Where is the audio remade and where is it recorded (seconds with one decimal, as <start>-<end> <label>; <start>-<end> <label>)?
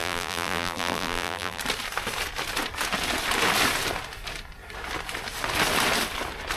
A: 0.0-1.6 remade; 1.6-6.6 recorded